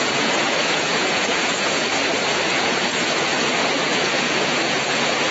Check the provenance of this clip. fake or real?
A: fake